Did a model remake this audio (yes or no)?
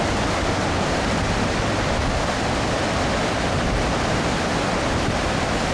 no